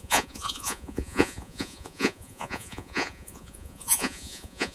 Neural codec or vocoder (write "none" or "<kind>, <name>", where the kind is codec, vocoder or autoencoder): vocoder, Vocos